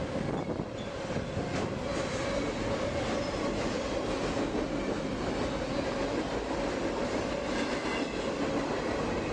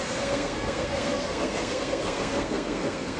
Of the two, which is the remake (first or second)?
second